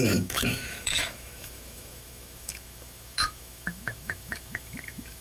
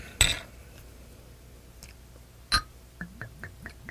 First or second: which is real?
second